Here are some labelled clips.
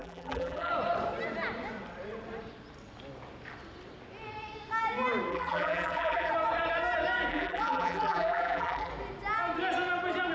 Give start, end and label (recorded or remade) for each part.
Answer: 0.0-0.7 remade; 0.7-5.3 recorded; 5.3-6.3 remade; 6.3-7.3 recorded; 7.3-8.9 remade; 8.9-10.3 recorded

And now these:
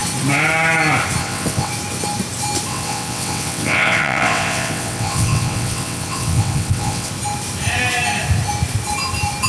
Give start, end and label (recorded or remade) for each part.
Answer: 0.0-1.2 recorded; 1.2-1.7 remade; 1.7-2.7 recorded; 2.7-7.1 remade; 7.1-9.5 recorded

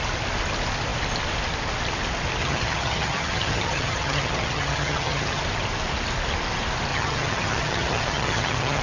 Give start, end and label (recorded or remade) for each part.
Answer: 0.0-2.4 recorded; 2.4-5.4 remade; 5.4-6.9 recorded; 6.9-8.8 remade

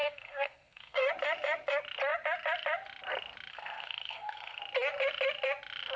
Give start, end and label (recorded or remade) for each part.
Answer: 0.0-1.1 remade; 1.1-3.5 recorded; 3.5-4.6 remade; 4.6-6.0 recorded

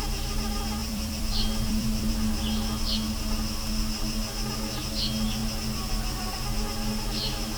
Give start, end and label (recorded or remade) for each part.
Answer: 0.0-0.8 recorded; 0.8-2.1 remade; 2.1-5.4 recorded; 5.4-6.4 remade; 6.4-7.6 recorded

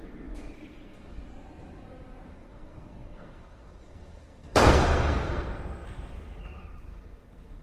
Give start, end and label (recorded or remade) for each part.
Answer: 0.0-1.2 remade; 1.2-2.3 recorded; 2.3-7.6 remade